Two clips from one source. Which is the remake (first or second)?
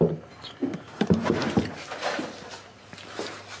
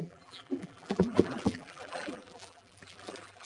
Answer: second